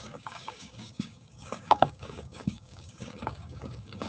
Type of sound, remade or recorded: remade